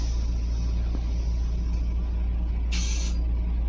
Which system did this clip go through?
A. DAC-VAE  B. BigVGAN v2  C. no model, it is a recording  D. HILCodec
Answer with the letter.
C